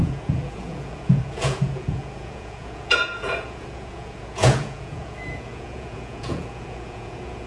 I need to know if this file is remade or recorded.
remade